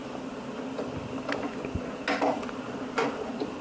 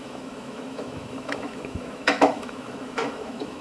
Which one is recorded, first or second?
first